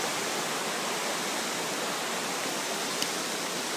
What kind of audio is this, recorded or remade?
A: recorded